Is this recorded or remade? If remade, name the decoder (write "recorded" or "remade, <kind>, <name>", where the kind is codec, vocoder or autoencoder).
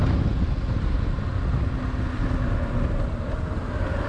recorded